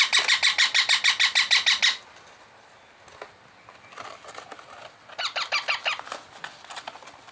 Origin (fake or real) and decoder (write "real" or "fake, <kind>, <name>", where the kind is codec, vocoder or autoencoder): real